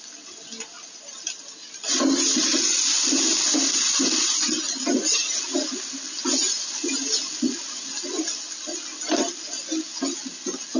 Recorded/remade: recorded